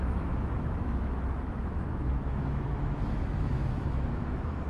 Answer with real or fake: fake